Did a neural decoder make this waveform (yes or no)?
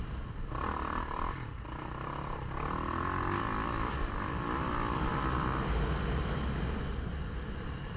no